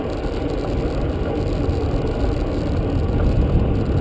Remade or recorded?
recorded